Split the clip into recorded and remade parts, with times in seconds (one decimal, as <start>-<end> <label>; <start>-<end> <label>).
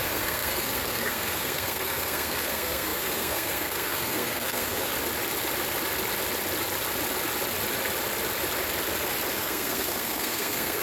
0.0-4.9 remade; 4.9-9.3 recorded; 9.3-10.8 remade